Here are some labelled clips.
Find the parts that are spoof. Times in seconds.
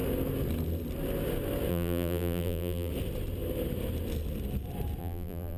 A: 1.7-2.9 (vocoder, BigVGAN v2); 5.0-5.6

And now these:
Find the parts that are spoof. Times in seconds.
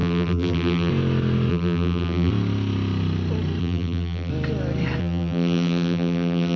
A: 0.0-0.9 (vocoder, BigVGAN v2); 1.5-2.3; 3.6-4.3; 5.0-6.6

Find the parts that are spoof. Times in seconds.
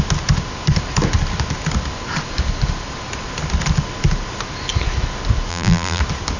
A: 5.5-6.0 (vocoder, BigVGAN v2)